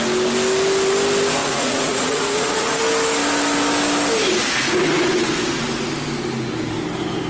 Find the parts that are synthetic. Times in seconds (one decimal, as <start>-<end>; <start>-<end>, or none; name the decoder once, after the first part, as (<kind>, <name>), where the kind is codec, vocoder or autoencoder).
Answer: 1.4-2.8 (vocoder, Vocos)